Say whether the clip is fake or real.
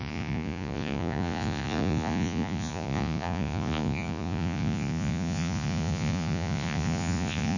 fake